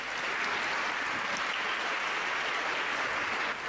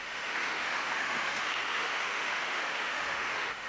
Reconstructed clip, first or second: second